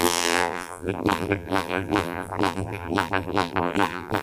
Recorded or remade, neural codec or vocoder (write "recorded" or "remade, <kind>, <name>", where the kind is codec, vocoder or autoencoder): remade, vocoder, BigVGAN v2